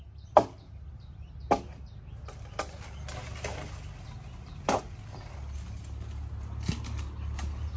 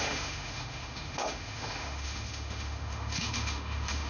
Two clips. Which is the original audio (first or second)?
first